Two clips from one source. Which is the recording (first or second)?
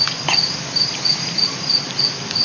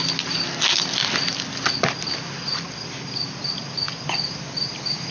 second